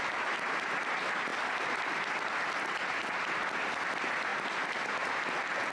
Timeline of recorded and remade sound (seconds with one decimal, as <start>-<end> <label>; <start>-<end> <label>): 0.0-5.7 recorded